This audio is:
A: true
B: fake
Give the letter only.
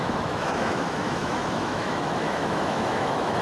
B